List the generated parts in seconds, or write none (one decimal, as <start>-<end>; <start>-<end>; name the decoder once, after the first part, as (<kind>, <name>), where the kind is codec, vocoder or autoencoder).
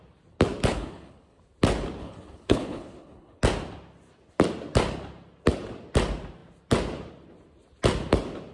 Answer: 0.7-1.4 (codec, HILCodec); 2.0-3.4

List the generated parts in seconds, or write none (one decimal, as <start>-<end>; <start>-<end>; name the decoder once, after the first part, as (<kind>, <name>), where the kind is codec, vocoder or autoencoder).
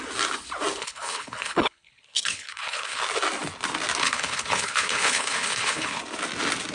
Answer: 0.8-3.0 (codec, HILCodec); 4.0-6.0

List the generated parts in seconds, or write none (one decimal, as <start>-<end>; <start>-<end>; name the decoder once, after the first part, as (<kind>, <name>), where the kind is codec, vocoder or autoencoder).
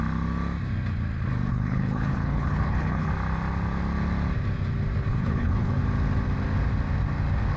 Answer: 1.5-3.1 (codec, HILCodec); 5.1-5.8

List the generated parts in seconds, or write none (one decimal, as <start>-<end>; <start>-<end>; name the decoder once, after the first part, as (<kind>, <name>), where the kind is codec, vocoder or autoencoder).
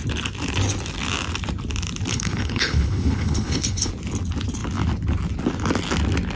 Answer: 2.1-3.9 (codec, HILCodec)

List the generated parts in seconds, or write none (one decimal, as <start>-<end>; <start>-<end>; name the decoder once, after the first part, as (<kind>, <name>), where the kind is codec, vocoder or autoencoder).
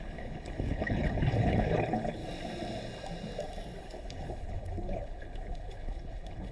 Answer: 0.0-2.2 (codec, HILCodec); 3.8-6.5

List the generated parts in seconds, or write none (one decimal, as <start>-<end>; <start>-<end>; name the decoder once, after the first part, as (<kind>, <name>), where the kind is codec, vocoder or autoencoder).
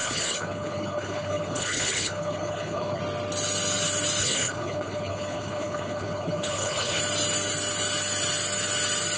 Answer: 0.0-3.0 (codec, HILCodec); 4.2-7.0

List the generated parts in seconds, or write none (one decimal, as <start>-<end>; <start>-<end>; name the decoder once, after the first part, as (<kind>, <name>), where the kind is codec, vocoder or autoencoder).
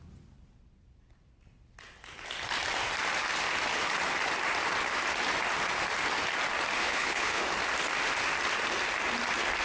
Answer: 6.8-7.4 (codec, HILCodec)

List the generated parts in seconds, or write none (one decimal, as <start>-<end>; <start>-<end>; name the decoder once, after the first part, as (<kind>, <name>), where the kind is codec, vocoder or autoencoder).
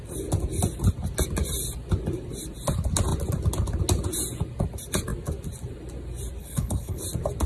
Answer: 6.4-7.0 (codec, HILCodec)